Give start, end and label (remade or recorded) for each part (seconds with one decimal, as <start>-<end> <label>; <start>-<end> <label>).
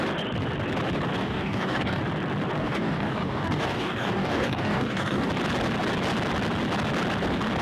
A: 0.0-1.2 recorded; 1.2-2.0 remade; 2.0-2.6 recorded; 2.6-5.3 remade; 5.3-7.6 recorded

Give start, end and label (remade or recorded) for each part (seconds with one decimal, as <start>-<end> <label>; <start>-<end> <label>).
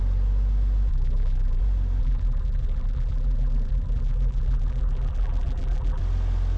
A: 0.0-0.9 recorded; 0.9-1.6 remade; 1.6-2.0 recorded; 2.0-6.0 remade; 6.0-6.6 recorded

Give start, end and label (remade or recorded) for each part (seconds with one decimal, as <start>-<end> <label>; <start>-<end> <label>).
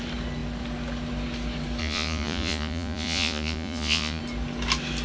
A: 0.0-1.8 recorded; 1.8-4.2 remade; 4.2-5.0 recorded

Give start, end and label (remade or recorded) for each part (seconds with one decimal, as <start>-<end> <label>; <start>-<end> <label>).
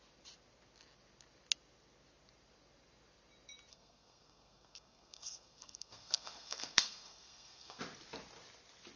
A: 0.0-3.7 recorded; 3.7-7.8 remade; 7.8-9.0 recorded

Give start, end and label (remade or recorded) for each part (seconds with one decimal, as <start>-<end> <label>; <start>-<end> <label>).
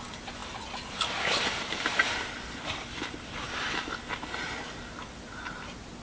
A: 0.0-6.0 recorded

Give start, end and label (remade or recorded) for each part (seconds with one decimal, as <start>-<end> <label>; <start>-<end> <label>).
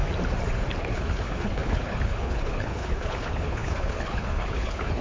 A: 0.0-0.8 recorded; 0.8-5.0 remade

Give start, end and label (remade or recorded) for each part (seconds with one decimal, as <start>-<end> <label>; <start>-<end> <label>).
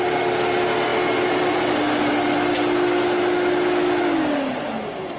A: 0.0-5.2 recorded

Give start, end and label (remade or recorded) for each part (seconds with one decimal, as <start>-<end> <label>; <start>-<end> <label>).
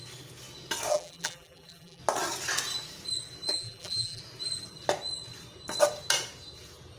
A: 0.0-0.9 recorded; 0.9-2.0 remade; 2.0-3.5 recorded; 3.5-4.2 remade; 4.2-7.0 recorded